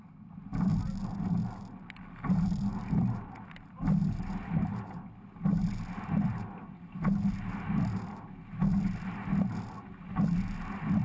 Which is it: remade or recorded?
recorded